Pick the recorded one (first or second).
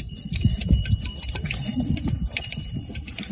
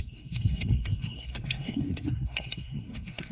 first